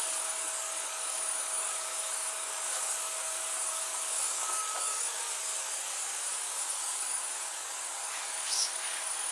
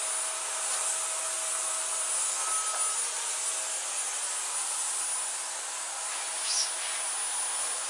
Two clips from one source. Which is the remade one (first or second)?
first